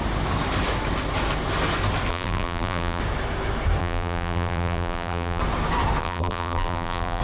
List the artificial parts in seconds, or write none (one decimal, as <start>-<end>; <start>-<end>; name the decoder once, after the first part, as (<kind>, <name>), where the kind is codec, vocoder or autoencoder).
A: 2.1-3.0 (vocoder, BigVGAN v2); 3.8-5.4; 6.0-7.2